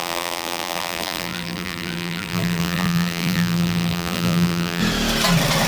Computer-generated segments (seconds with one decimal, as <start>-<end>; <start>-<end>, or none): 0.0-4.8